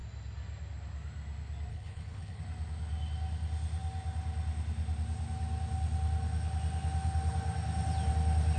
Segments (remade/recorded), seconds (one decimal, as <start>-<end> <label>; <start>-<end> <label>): 0.0-1.7 recorded; 1.7-2.4 remade; 2.4-8.6 recorded